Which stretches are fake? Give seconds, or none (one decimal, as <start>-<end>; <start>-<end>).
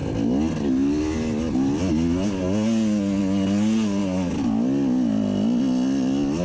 none